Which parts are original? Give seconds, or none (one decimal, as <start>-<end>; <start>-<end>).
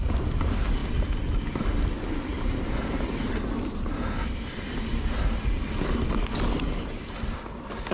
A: 0.0-2.3; 4.7-7.9